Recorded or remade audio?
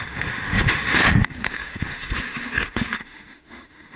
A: remade